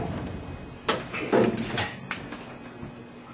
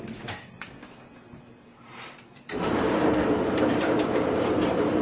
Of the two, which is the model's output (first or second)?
second